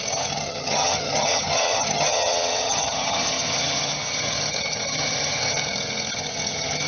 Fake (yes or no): yes